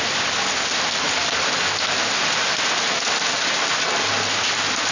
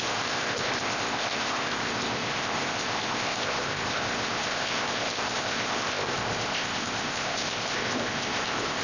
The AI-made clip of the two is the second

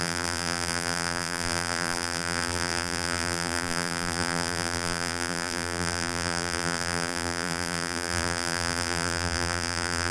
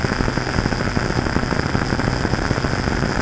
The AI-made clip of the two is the first